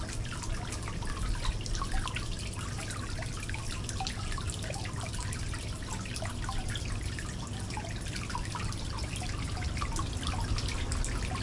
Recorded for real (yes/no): yes